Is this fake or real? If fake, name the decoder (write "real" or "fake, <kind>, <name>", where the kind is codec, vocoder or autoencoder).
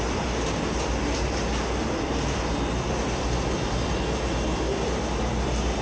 fake, vocoder, BigVGAN v2